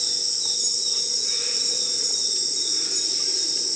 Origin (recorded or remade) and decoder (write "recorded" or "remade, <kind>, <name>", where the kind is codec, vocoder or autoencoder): recorded